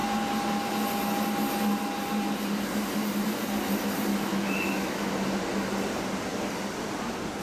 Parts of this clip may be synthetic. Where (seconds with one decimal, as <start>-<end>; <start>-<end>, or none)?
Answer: 4.1-5.1